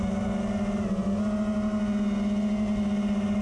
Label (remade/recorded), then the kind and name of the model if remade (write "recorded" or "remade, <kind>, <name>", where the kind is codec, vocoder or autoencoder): recorded